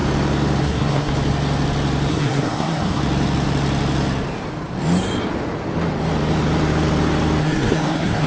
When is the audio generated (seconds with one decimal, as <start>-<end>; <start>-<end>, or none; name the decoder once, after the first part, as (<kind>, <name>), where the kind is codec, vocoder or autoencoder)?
0.6-1.1 (codec, SNAC); 2.1-3.0; 7.4-8.3